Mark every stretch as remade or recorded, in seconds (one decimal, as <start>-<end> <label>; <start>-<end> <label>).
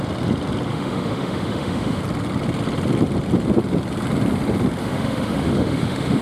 0.0-0.7 recorded; 0.7-2.0 remade; 2.0-4.8 recorded; 4.8-6.2 remade